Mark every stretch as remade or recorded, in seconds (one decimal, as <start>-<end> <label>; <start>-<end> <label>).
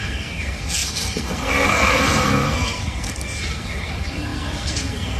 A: 0.0-5.2 remade